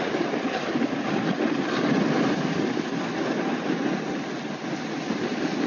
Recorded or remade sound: recorded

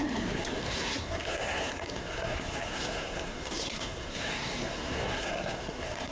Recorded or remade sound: remade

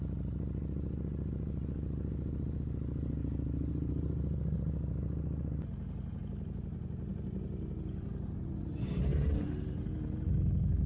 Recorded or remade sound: recorded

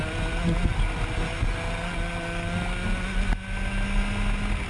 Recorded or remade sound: recorded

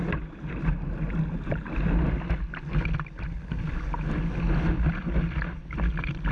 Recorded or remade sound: recorded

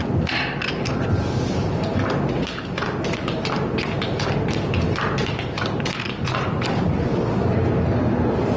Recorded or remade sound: recorded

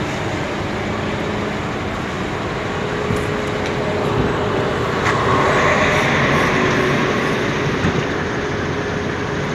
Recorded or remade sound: recorded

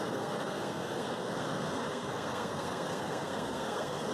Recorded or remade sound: remade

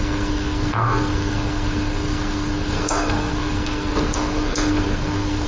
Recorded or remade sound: remade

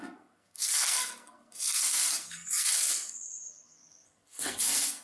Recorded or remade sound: remade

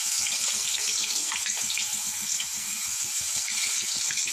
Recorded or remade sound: remade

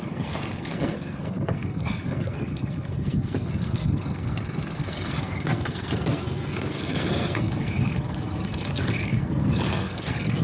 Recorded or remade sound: remade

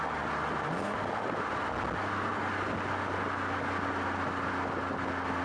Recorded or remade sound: recorded